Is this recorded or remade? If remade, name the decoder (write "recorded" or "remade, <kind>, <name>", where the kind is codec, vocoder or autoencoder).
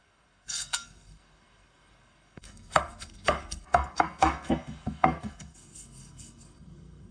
remade, codec, SNAC